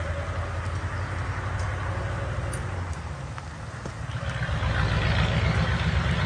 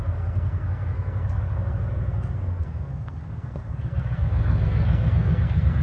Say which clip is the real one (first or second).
first